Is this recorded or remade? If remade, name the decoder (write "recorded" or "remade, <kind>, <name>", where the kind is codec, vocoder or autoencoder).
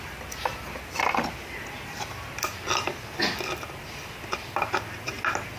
recorded